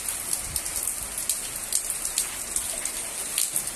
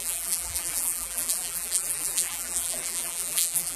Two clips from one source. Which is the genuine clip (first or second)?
first